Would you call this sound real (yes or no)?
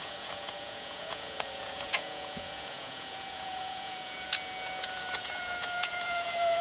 no